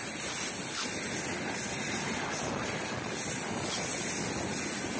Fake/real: real